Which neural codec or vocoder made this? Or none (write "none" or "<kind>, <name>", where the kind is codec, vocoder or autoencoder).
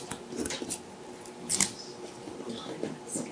none